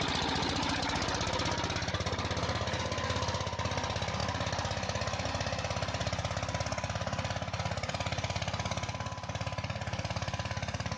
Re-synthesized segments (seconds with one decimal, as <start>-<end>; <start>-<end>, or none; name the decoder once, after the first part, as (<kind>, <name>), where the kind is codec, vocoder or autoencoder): none